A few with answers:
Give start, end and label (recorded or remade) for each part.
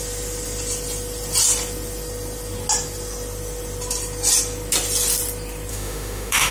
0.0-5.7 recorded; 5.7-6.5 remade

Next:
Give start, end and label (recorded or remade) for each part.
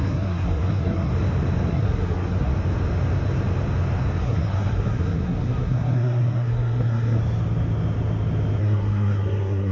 0.0-1.1 remade; 1.1-1.7 recorded; 1.7-2.5 remade; 2.5-4.2 recorded; 4.2-7.2 remade; 7.2-8.6 recorded; 8.6-9.7 remade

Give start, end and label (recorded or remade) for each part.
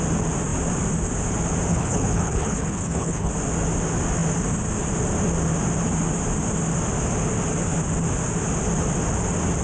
0.0-1.7 recorded; 1.7-3.3 remade; 3.3-9.6 recorded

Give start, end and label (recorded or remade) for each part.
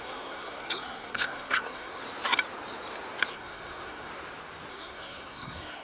0.0-2.0 remade; 2.0-3.3 recorded; 3.3-4.1 remade; 4.1-4.7 recorded; 4.7-5.8 remade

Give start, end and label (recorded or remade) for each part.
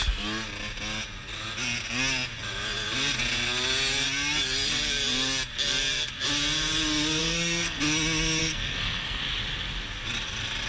0.0-7.2 recorded; 7.2-7.8 remade; 7.8-8.4 recorded; 8.4-9.2 remade; 9.2-10.7 recorded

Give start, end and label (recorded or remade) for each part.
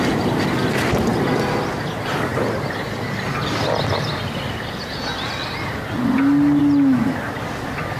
0.0-8.0 recorded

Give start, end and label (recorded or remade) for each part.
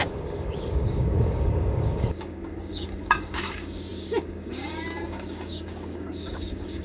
0.0-6.8 remade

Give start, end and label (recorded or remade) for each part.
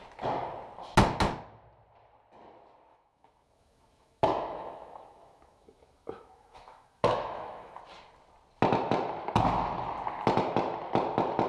0.0-2.9 recorded; 2.9-7.8 remade; 7.8-11.5 recorded